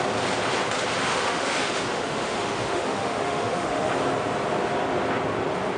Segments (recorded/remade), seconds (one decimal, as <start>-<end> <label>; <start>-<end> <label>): 0.0-1.1 recorded; 1.1-3.9 remade; 3.9-5.8 recorded